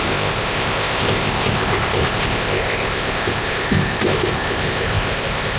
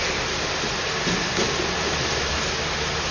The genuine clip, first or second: second